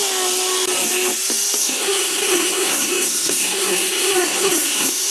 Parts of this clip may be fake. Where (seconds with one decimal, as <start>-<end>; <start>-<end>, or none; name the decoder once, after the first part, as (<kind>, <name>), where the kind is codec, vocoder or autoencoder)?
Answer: 1.6-5.1 (codec, SNAC)